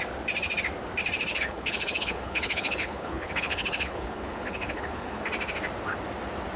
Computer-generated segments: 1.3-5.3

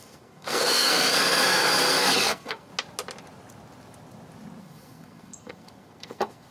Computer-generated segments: 0.0-2.7; 4.6-6.5

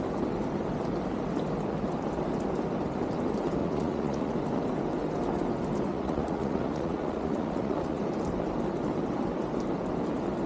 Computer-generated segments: 3.6-4.3; 5.9-8.0

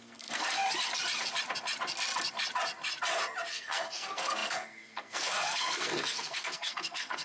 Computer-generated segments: 0.0-0.6; 3.5-7.2

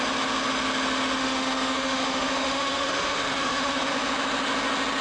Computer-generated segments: 1.2-3.9

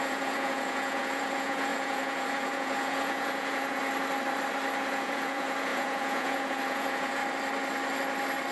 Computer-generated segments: 0.0-3.8; 4.8-7.2

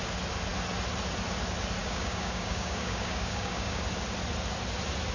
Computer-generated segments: 1.8-3.8

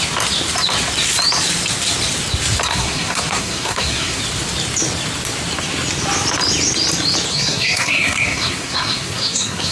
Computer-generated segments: 2.7-4.2; 7.3-9.7